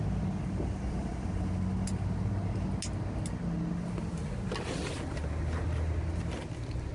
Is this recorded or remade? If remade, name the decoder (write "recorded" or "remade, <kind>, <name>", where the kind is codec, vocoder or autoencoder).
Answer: recorded